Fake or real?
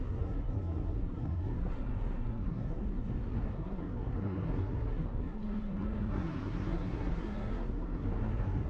fake